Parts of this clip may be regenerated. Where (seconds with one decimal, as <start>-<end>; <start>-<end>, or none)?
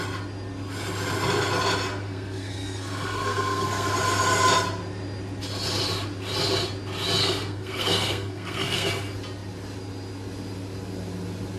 2.0-3.9; 7.2-8.9